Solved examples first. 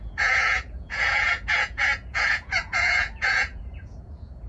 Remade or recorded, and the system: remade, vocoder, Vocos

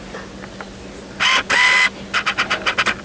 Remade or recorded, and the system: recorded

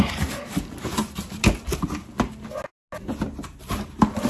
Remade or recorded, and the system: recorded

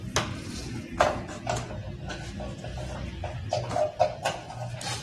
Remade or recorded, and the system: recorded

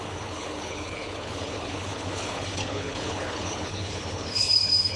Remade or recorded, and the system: remade, codec, HILCodec